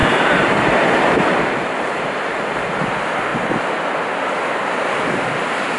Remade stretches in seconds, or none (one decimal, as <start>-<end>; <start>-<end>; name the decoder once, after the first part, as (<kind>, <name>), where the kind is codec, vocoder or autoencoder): 0.0-2.8 (vocoder, BigVGAN v2)